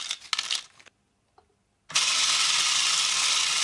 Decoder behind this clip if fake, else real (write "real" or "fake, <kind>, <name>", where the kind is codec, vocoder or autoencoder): real